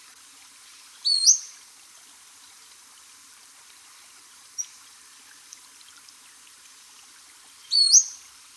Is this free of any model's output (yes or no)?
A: no